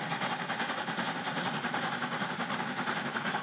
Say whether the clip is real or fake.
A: real